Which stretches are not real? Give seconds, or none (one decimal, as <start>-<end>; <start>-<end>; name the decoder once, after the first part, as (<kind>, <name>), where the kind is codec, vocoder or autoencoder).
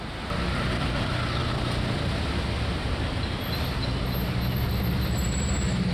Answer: none